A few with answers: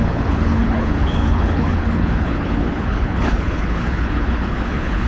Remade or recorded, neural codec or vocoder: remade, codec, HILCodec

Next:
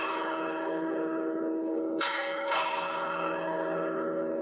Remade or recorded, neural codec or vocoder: remade, codec, HILCodec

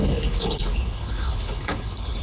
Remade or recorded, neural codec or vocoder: remade, codec, HILCodec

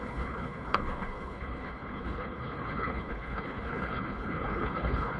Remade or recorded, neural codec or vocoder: remade, codec, HILCodec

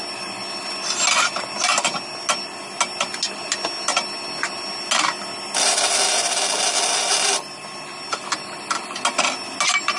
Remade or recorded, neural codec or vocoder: recorded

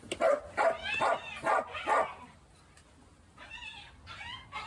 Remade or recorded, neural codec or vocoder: recorded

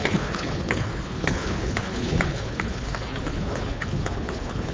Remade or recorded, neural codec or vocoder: remade, codec, HILCodec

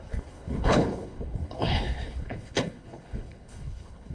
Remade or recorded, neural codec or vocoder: remade, codec, HILCodec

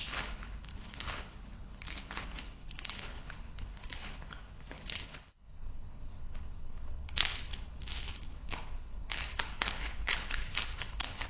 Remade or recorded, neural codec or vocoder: remade, codec, HILCodec